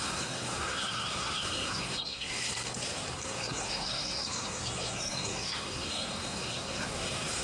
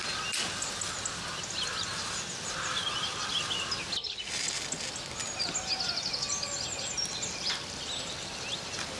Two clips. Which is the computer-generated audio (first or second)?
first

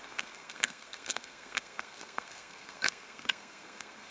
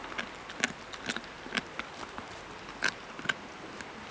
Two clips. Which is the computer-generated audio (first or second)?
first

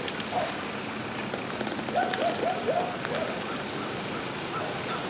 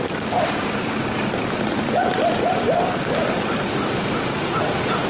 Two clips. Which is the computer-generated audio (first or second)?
second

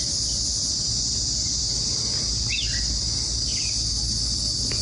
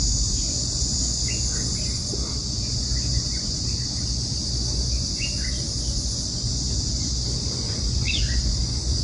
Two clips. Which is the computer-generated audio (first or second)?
second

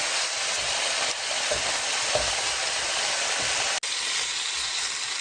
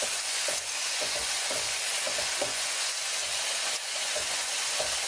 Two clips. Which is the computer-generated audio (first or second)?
second